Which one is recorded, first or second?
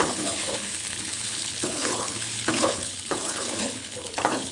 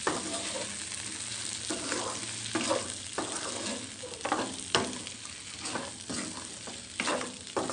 second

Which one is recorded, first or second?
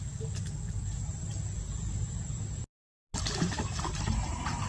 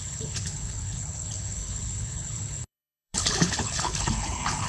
first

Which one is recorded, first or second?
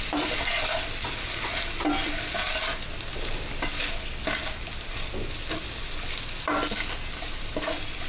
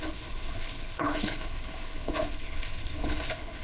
first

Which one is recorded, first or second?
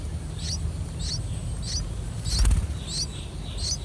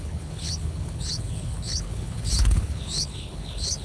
first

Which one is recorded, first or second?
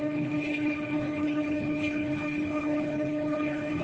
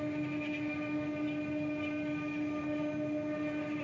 second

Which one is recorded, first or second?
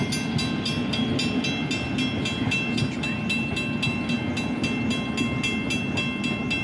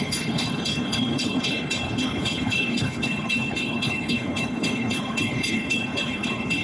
first